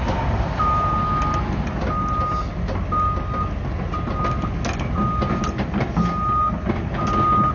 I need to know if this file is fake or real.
real